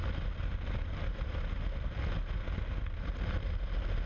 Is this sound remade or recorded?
recorded